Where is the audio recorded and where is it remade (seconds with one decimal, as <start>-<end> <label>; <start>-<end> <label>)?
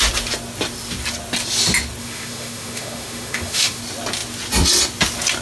0.0-2.0 recorded; 2.0-3.8 remade; 3.8-5.4 recorded